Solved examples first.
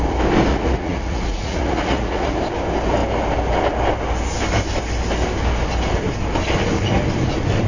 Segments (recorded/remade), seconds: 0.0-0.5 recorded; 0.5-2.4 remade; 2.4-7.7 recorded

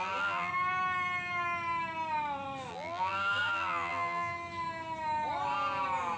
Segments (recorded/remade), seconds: 0.0-0.5 remade; 0.5-2.7 recorded; 2.7-4.3 remade; 4.3-6.2 recorded